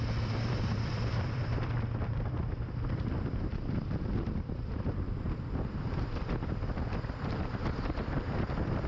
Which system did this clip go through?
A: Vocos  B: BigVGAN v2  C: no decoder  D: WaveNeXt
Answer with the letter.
B